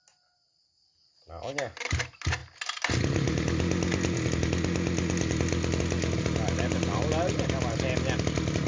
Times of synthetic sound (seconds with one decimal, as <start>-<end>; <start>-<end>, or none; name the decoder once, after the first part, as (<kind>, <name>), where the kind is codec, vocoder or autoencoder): none